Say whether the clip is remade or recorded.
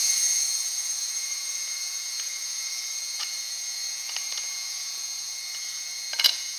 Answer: remade